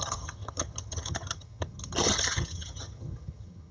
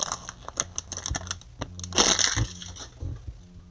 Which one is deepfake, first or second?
first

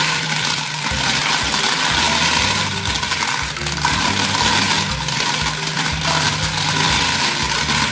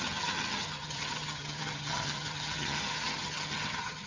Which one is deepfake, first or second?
second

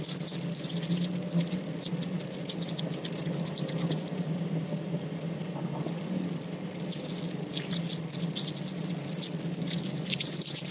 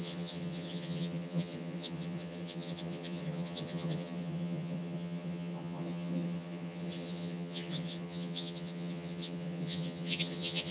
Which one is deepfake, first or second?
second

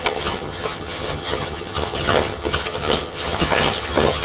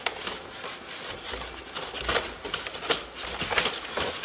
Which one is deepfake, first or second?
first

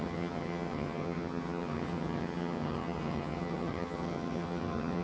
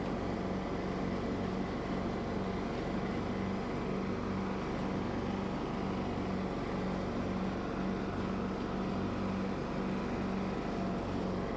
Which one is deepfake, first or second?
first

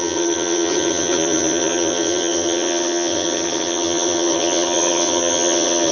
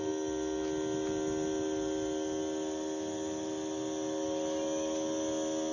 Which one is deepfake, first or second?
first